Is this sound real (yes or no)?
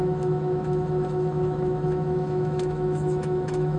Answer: no